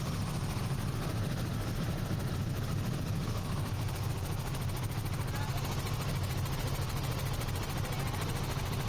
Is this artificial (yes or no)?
no